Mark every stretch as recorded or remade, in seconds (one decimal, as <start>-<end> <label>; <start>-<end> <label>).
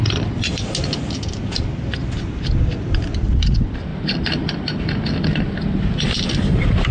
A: 0.0-6.9 recorded